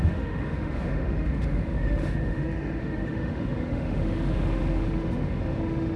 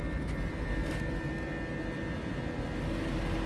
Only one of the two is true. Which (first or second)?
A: second